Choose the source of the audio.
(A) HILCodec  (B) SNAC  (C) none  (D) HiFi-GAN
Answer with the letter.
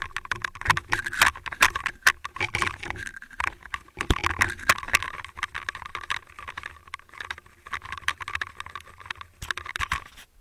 C